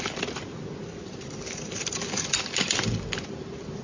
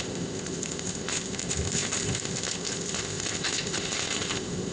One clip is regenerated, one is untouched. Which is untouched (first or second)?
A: first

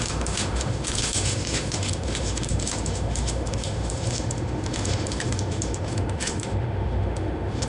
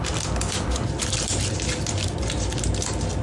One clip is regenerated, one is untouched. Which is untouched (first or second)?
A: second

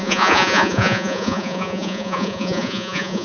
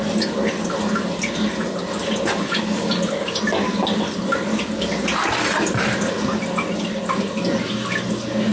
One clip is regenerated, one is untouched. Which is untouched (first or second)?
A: second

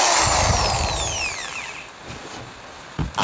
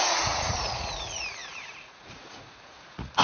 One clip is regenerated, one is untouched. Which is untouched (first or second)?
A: first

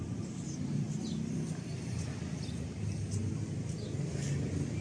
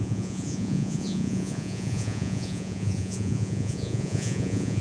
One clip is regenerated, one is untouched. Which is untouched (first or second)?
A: first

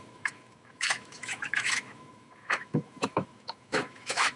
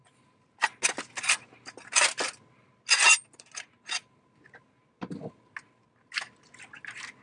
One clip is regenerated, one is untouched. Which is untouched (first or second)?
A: second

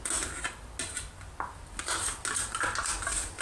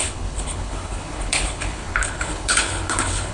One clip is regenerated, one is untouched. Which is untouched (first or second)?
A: first